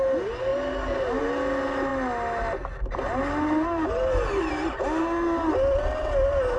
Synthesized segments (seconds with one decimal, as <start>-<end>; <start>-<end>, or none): none